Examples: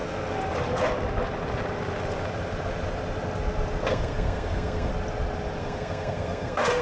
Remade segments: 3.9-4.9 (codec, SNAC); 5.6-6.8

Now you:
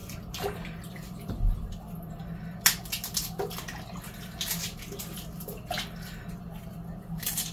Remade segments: none